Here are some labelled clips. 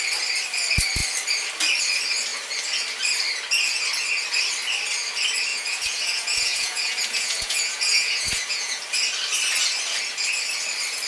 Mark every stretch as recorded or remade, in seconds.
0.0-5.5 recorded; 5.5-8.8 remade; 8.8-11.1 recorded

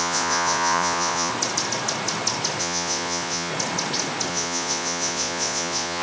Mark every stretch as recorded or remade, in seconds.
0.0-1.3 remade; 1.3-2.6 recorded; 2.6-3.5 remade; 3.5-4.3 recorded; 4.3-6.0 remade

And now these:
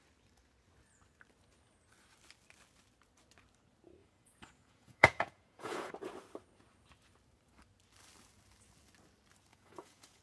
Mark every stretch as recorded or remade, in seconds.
0.0-4.0 recorded; 4.0-5.9 remade; 5.9-9.5 recorded; 9.5-10.2 remade